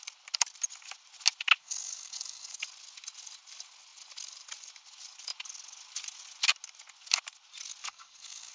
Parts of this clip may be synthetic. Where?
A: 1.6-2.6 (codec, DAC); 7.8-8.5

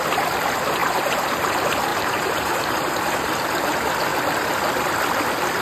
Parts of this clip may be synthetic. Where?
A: 0.8-1.5 (vocoder, BigVGAN v2); 1.9-2.9

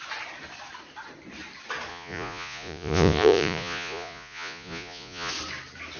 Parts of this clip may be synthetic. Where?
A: 1.9-5.3 (vocoder, Vocos)

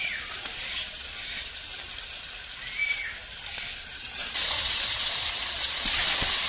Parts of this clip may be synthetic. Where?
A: 0.0-1.7 (vocoder, Vocos); 3.5-6.5

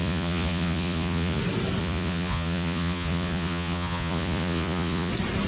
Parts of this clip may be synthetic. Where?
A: 0.0-1.4 (vocoder, Vocos); 1.8-5.1

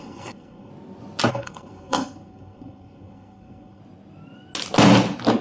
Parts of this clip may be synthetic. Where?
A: 0.0-0.7 (codec, SNAC); 1.3-3.8

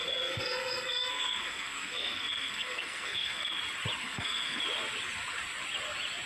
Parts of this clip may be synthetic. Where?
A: 0.0-3.6 (codec, SNAC); 4.0-4.6

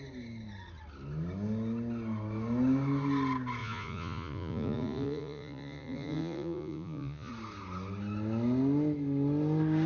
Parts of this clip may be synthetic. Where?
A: 3.6-7.3 (vocoder, Vocos)